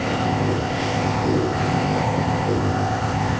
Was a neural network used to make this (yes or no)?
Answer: yes